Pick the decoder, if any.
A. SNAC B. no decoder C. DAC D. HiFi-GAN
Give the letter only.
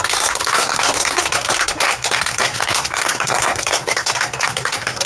A